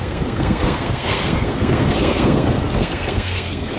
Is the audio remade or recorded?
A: remade